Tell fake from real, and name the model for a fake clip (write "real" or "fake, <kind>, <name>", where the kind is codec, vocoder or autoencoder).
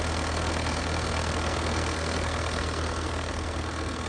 fake, codec, SNAC